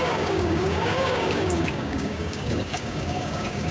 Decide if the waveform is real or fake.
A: fake